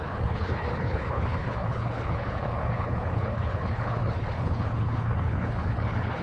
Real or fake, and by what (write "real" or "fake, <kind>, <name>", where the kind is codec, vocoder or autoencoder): fake, codec, HILCodec